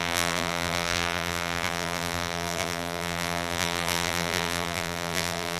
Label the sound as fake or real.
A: fake